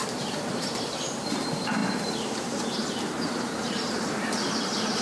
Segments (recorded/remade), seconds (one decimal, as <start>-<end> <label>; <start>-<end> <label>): 0.0-5.0 remade